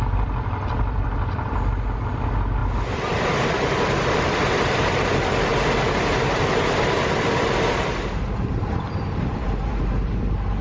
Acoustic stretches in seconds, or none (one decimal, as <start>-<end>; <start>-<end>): 5.5-6.4